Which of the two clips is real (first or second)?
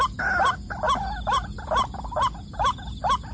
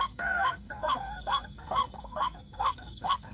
first